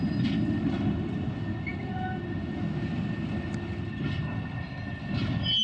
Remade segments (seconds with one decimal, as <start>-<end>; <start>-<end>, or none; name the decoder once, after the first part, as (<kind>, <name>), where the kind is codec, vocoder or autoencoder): none